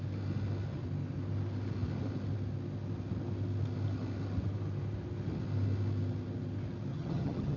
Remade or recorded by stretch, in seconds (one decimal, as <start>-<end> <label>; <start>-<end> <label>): 0.0-6.9 recorded; 6.9-7.6 remade